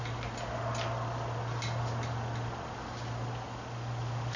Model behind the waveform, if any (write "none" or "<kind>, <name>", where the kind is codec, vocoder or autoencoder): none